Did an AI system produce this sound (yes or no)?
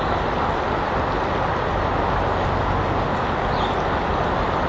no